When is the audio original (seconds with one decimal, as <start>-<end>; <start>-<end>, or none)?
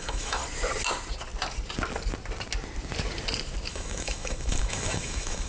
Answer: 0.4-3.7